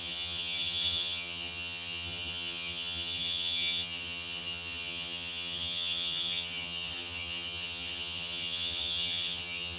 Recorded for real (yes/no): no